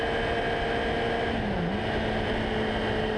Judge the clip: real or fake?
real